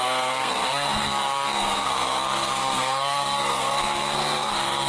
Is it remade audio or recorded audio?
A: remade